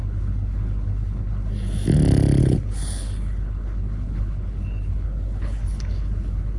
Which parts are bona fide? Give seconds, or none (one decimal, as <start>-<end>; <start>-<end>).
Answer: 1.5-2.4